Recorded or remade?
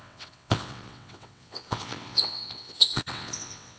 remade